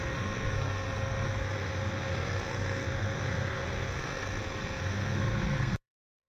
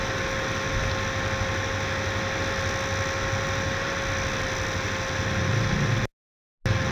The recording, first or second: second